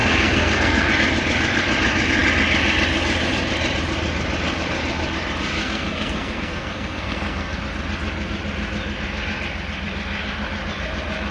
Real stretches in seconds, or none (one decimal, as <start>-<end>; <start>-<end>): 0.9-5.6; 7.6-11.3